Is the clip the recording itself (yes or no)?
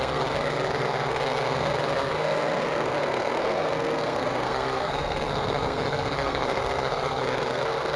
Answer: no